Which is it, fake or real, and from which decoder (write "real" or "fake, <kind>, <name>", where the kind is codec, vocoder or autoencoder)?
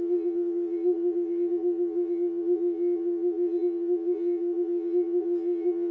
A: fake, vocoder, Vocos